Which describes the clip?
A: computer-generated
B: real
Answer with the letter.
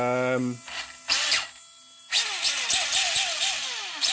B